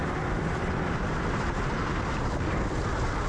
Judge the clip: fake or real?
real